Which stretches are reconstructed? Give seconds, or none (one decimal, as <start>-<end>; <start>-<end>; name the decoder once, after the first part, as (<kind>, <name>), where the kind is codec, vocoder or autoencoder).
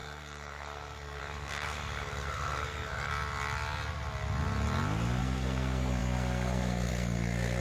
0.0-3.1 (codec, SNAC); 5.2-7.6